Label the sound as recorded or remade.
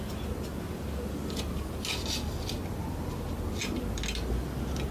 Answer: recorded